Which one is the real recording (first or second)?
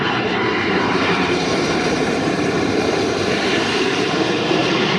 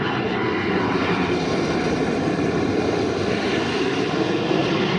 second